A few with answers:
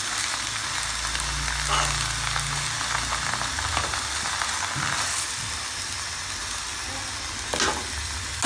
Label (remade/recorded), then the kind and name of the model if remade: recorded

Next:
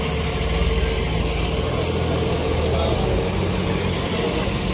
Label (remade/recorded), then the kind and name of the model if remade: recorded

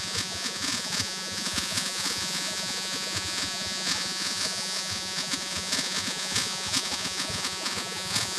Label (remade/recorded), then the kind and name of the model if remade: remade, vocoder, Vocos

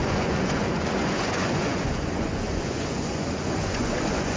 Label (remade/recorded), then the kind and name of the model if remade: remade, vocoder, Vocos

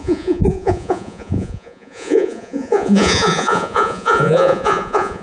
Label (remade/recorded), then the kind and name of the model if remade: remade, vocoder, Vocos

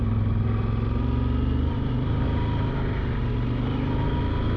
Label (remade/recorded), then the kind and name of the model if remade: recorded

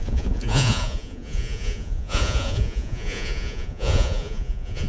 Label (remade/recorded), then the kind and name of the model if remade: remade, vocoder, Vocos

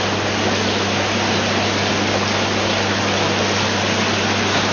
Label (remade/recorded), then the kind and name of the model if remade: recorded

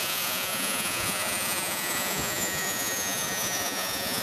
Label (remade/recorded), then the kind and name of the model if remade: remade, vocoder, Vocos